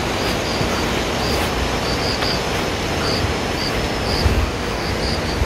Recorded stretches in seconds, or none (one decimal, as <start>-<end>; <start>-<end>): 0.0-4.3; 4.9-5.4

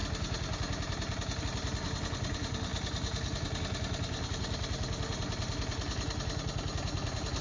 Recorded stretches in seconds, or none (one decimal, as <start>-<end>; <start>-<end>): 0.0-7.4

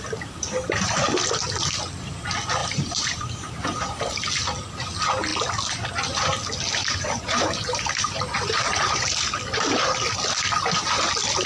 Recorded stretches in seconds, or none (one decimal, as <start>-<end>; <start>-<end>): 0.0-2.6; 4.2-6.8; 9.0-11.5